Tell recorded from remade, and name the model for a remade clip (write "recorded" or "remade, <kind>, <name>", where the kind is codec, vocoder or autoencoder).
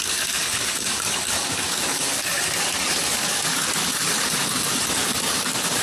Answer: remade, codec, DAC